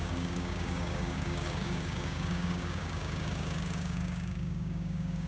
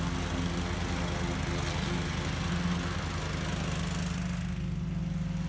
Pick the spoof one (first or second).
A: first